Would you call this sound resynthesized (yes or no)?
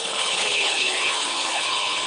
yes